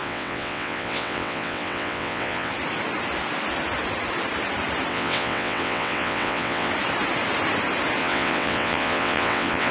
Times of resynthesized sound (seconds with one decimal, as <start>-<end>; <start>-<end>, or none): 0.0-2.5; 4.9-6.7; 8.0-9.7